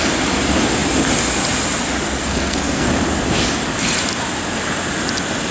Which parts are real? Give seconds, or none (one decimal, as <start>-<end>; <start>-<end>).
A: 0.0-2.2; 2.9-5.5